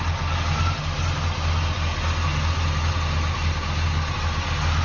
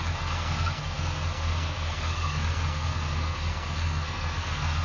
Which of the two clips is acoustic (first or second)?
first